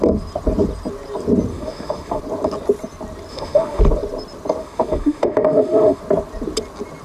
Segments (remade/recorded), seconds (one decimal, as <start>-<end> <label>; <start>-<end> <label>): 0.0-1.5 recorded; 1.5-2.2 remade; 2.2-3.3 recorded; 3.3-3.8 remade; 3.8-4.6 recorded; 4.6-6.0 remade; 6.0-7.0 recorded